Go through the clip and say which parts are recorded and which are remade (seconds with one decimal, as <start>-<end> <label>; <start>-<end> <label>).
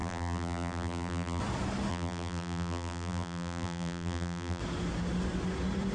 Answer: 0.0-1.4 remade; 1.4-1.9 recorded; 1.9-4.6 remade; 4.6-5.9 recorded